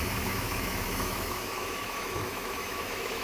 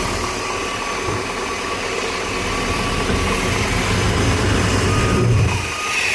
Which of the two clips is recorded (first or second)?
second